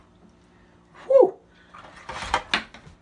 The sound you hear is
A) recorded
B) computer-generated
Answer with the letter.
A